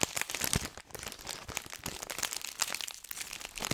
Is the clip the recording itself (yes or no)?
yes